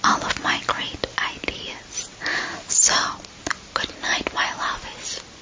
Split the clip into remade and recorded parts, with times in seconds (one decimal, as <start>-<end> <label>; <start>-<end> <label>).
0.0-5.4 recorded